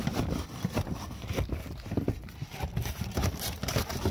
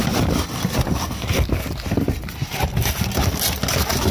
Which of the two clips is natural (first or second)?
second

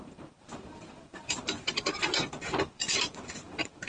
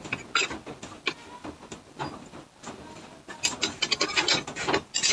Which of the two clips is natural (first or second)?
second